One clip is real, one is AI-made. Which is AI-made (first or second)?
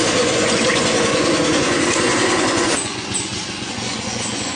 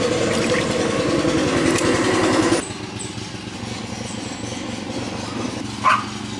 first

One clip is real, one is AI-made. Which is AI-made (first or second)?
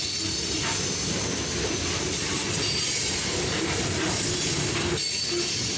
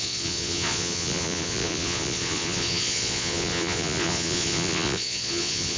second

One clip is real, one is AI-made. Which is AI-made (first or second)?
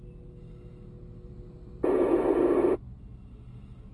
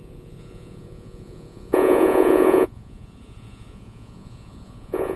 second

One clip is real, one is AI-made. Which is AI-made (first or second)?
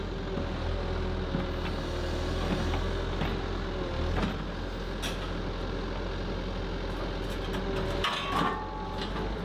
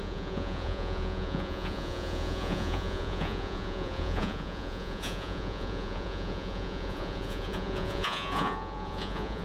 second